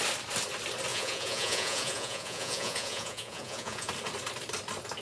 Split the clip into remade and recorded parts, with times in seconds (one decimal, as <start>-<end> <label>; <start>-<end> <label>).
0.0-0.9 recorded; 0.9-3.9 remade; 3.9-5.0 recorded